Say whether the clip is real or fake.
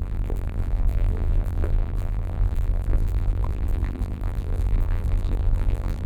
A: fake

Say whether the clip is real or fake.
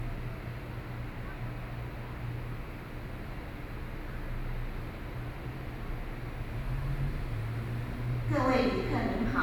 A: real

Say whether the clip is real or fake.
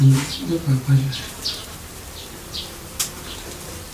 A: real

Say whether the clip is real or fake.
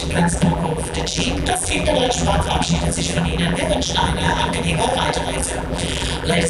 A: fake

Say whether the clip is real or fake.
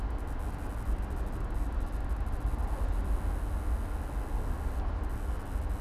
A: real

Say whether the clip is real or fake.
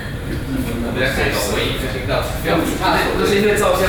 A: fake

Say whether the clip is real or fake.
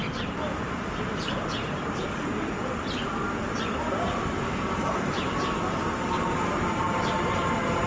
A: fake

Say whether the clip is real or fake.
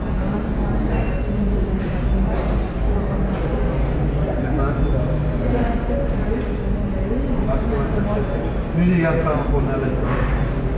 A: real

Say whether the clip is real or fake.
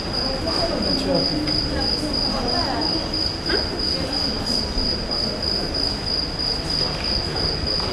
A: real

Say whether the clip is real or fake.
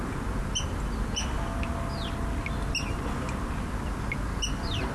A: real